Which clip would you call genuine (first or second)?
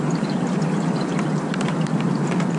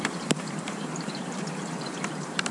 first